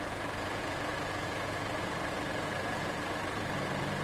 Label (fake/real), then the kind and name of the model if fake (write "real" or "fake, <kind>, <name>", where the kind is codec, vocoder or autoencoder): fake, vocoder, Vocos